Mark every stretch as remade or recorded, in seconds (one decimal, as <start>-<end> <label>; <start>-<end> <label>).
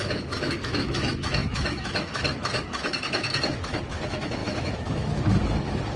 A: 0.0-6.0 remade